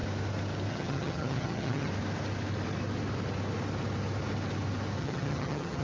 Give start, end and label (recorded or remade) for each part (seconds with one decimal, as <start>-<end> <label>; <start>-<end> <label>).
0.0-0.7 recorded; 0.7-1.9 remade; 1.9-5.0 recorded; 5.0-5.8 remade